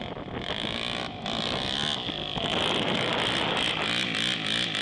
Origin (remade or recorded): recorded